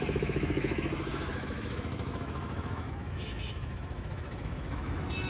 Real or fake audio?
fake